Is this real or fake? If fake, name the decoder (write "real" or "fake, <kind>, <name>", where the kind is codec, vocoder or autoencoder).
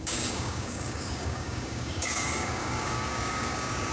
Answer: fake, codec, DAC